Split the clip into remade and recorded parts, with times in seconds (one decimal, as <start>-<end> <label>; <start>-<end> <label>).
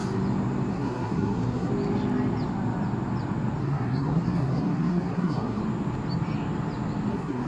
0.0-0.7 recorded; 0.7-1.7 remade; 1.7-3.6 recorded; 3.6-5.6 remade; 5.6-7.1 recorded; 7.1-7.5 remade